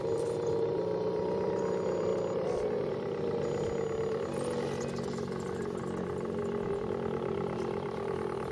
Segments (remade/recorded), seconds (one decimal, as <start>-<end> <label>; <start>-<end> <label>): 0.0-2.1 remade; 2.1-6.7 recorded; 6.7-8.5 remade